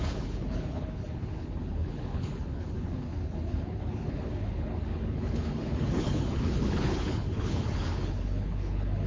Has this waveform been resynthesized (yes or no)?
yes